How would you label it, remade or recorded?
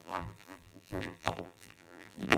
remade